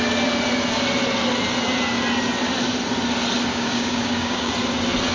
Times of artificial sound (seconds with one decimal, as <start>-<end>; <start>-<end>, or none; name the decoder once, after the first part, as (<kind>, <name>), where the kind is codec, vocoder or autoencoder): 3.5-4.5 (codec, DAC)